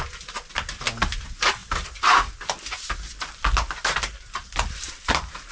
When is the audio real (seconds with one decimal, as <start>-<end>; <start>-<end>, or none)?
0.0-5.5